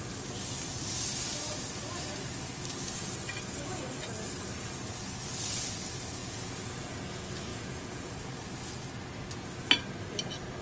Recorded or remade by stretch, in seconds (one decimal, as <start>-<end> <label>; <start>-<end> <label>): 0.0-6.2 recorded; 6.2-7.0 remade; 7.0-7.5 recorded; 7.5-8.1 remade; 8.1-10.6 recorded